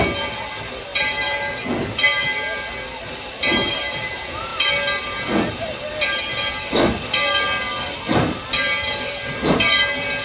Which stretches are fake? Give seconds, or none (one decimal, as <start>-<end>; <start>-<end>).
none